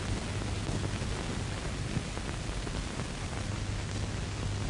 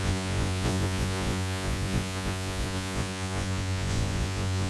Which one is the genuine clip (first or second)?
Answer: first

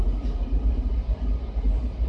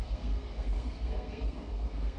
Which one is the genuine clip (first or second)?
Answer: first